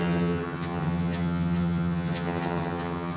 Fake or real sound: fake